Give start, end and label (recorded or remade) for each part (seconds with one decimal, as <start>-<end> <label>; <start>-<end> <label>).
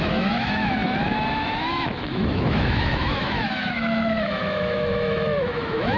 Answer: 0.0-6.0 remade